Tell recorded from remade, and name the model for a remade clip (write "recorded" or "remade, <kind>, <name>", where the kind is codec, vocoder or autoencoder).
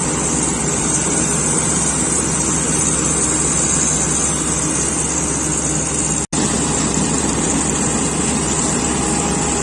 recorded